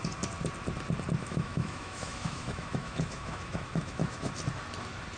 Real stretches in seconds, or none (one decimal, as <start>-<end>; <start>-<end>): 0.0-1.2; 4.3-5.2

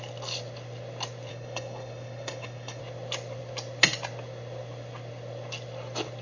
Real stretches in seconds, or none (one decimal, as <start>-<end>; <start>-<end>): 0.0-1.3; 2.8-6.2

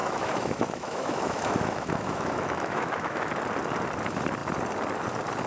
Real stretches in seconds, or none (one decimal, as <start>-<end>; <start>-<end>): 3.3-5.5

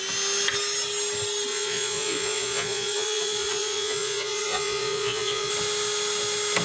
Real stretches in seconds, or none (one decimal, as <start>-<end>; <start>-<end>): 0.0-1.5; 5.5-6.6

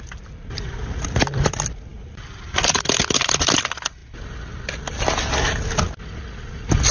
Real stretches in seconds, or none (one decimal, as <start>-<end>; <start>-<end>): 0.0-6.9